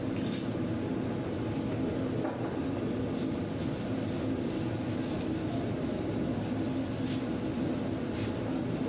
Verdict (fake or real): real